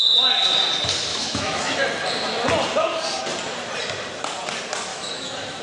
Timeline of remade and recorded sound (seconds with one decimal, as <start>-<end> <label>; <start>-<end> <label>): 0.0-1.1 recorded; 1.1-1.8 remade; 1.8-4.9 recorded; 4.9-5.6 remade